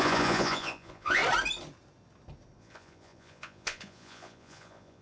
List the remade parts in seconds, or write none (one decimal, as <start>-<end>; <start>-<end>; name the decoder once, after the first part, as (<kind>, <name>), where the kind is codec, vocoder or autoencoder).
0.0-1.2 (vocoder, Vocos); 2.6-5.0